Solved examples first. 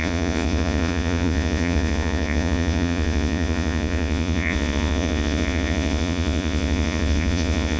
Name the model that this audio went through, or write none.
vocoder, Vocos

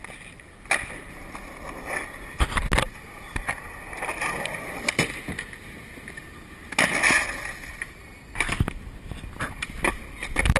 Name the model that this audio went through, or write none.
none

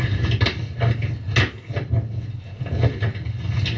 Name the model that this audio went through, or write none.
none